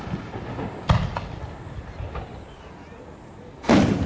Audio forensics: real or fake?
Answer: real